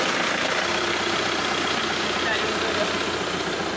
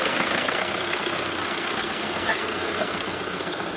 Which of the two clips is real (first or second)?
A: first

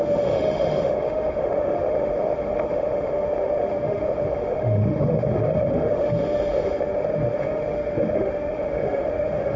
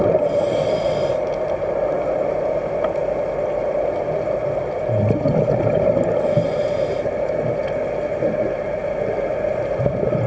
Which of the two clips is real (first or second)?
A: second